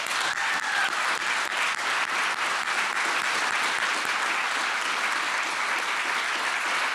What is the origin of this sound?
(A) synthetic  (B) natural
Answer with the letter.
B